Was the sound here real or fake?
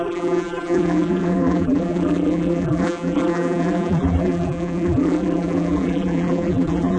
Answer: fake